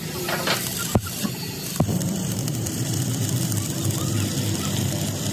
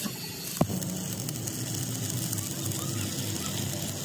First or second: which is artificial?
first